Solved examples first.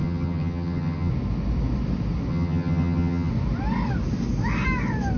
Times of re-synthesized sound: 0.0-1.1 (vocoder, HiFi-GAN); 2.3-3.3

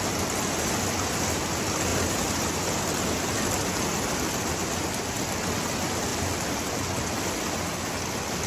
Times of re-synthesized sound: 1.9-2.5 (vocoder, BigVGAN v2)

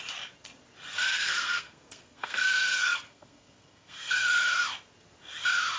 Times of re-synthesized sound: 1.0-4.3 (codec, SNAC)

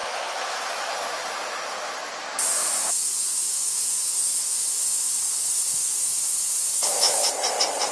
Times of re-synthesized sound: 0.0-0.9 (autoencoder, DAC-VAE); 2.6-7.3

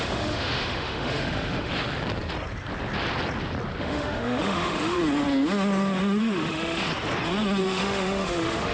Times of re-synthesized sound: 0.0-1.7 (autoencoder, DAC-VAE); 3.8-5.0; 6.2-6.9; 7.6-8.7